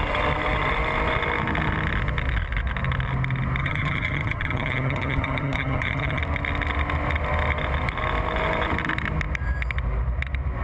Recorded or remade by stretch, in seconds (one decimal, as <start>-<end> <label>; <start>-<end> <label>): 0.0-3.6 recorded; 3.6-6.2 remade; 6.2-10.6 recorded